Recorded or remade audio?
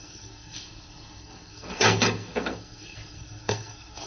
remade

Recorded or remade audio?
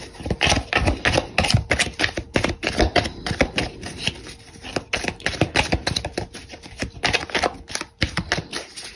recorded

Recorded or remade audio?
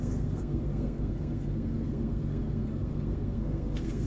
remade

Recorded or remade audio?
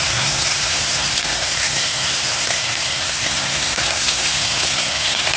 remade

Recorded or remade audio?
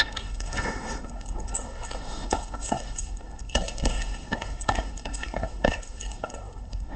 remade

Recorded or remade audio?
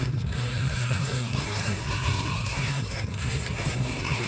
remade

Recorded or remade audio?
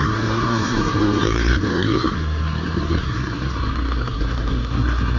remade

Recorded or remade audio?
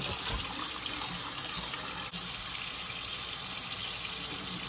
recorded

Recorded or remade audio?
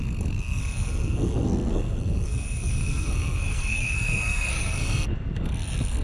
remade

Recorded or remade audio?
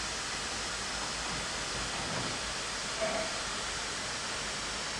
recorded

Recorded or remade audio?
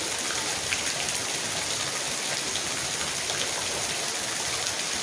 recorded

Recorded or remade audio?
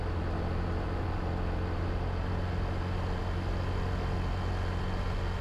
recorded